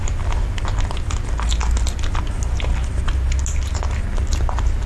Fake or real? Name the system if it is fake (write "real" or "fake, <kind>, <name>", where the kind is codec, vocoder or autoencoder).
real